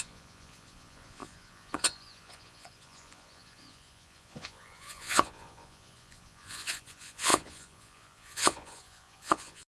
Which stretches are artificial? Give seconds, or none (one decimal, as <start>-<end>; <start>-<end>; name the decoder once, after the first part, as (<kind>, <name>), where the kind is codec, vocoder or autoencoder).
0.0-9.8 (vocoder, Vocos)